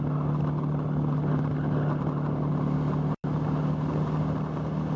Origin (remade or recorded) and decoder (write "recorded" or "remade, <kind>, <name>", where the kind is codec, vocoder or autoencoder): recorded